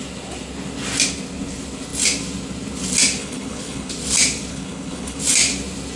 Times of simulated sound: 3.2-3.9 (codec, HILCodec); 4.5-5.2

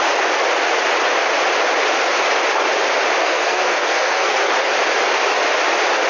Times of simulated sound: 3.2-4.5 (codec, SNAC)

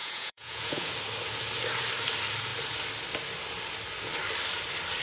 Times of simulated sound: 0.0-0.9 (vocoder, Vocos)